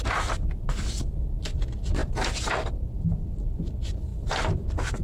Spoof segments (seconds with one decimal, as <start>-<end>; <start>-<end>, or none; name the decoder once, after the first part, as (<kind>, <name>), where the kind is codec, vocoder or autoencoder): none